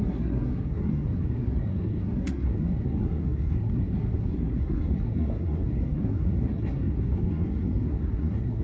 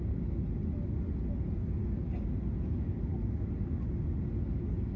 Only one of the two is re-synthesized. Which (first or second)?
first